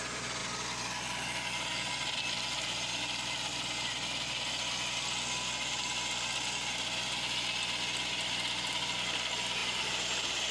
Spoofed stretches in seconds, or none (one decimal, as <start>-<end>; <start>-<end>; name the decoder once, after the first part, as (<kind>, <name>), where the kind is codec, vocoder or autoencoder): 9.6-10.5 (vocoder, BigVGAN v2)